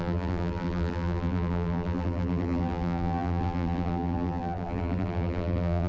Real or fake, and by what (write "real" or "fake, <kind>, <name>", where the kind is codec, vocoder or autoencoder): fake, vocoder, BigVGAN v2